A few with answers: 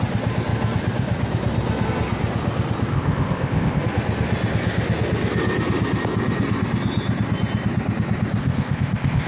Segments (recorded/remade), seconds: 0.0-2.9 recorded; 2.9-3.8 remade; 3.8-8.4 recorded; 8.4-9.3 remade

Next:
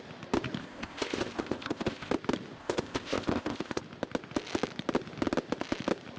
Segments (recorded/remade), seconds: 0.0-0.6 recorded; 0.6-2.1 remade; 2.1-2.6 recorded; 2.6-3.8 remade; 3.8-6.2 recorded